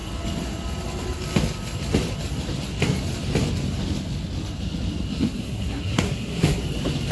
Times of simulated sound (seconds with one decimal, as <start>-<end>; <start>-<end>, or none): 5.1-6.6